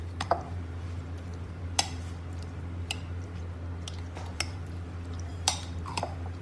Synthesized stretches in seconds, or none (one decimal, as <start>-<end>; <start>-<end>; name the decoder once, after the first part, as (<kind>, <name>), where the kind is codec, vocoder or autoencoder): 0.0-3.4 (vocoder, BigVGAN v2); 4.3-6.4